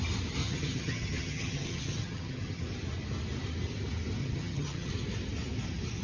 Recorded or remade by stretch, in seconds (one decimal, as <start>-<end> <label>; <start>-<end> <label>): 0.0-0.4 recorded; 0.4-2.6 remade; 2.6-4.2 recorded; 4.2-4.9 remade; 4.9-6.0 recorded